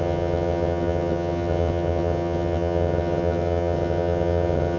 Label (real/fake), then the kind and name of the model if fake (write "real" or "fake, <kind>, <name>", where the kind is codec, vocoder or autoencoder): fake, vocoder, HiFi-GAN